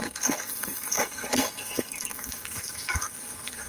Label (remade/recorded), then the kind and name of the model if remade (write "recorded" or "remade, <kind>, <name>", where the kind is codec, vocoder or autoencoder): remade, codec, SNAC